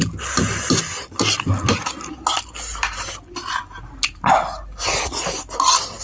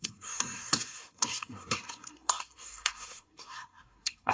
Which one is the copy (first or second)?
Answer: second